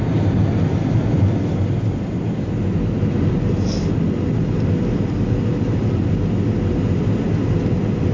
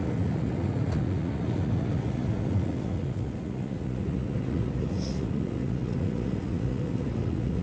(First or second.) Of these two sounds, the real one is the first